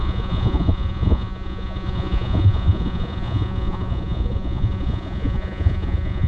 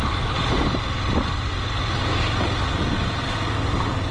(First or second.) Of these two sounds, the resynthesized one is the first